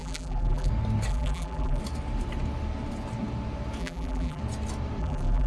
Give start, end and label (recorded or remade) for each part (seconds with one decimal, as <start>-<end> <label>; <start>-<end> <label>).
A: 0.0-0.7 remade; 0.7-1.1 recorded; 1.1-1.8 remade; 1.8-3.8 recorded; 3.8-4.4 remade; 4.4-5.0 recorded; 5.0-5.5 remade